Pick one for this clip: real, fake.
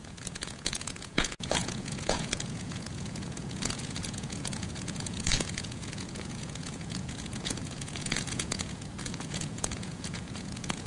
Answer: fake